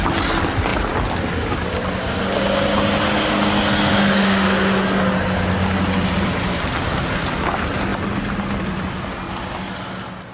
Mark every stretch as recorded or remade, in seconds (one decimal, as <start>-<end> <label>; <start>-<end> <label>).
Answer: 0.0-10.3 recorded